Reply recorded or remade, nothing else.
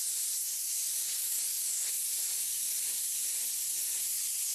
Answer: recorded